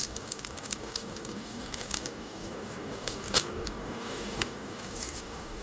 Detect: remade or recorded remade